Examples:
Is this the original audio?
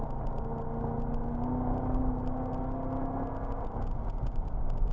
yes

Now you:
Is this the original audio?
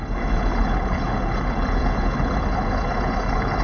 no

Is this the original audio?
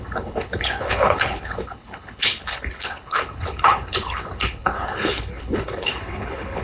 no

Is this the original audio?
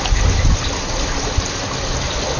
yes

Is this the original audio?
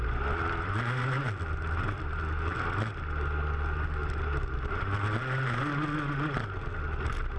yes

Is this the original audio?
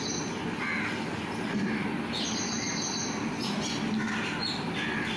yes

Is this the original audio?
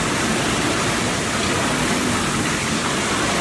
yes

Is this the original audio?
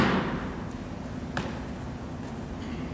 yes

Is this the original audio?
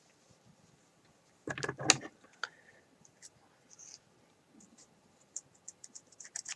yes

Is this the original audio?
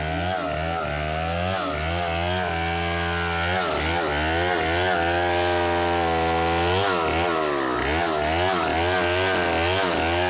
yes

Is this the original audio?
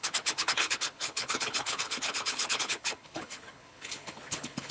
no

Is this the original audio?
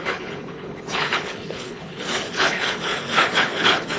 no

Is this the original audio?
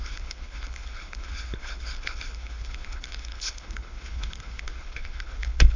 no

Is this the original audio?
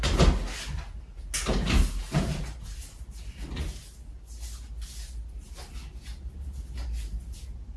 yes